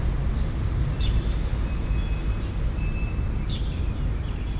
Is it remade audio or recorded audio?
recorded